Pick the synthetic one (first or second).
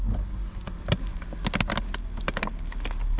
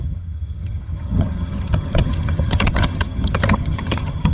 second